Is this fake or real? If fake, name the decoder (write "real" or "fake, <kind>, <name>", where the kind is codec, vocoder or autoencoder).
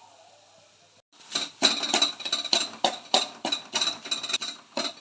real